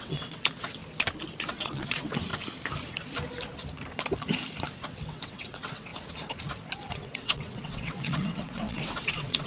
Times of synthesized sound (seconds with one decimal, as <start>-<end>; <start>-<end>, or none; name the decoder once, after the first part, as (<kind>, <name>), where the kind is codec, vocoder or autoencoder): 0.0-0.8 (vocoder, WaveNeXt); 1.5-2.3; 4.9-5.9; 6.9-9.5